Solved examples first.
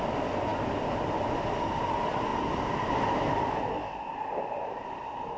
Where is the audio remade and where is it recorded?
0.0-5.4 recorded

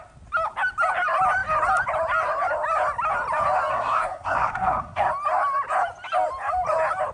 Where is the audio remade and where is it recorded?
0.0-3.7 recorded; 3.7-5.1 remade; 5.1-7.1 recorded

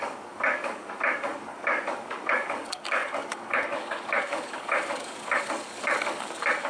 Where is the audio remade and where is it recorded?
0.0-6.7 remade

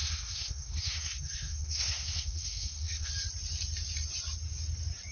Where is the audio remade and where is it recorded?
0.0-3.1 remade; 3.1-5.1 recorded